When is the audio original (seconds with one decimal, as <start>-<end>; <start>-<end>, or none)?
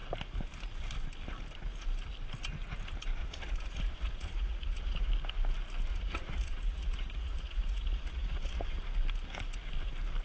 0.0-3.2; 5.1-5.9; 8.8-10.2